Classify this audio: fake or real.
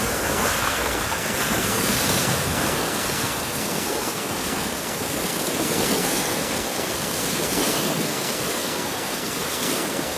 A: fake